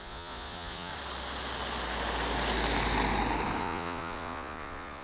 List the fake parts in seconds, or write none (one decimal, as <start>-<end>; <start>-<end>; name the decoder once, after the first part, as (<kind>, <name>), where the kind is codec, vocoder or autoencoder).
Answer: 0.0-0.9 (vocoder, Vocos); 3.6-5.0